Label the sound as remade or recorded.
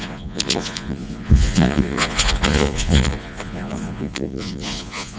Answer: remade